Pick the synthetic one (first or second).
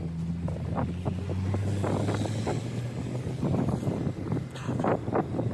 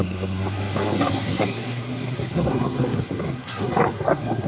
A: second